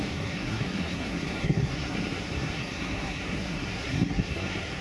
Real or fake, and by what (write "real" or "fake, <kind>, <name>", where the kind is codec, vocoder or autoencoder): fake, codec, SNAC